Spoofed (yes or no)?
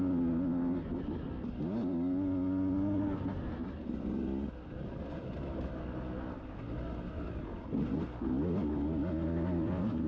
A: no